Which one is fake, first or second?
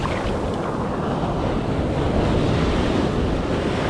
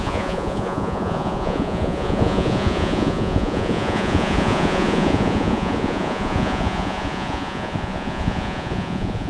second